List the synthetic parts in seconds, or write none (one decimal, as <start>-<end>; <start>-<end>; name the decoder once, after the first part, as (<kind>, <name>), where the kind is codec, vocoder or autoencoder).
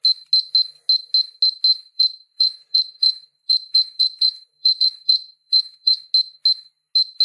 1.7-6.0 (vocoder, BigVGAN v2)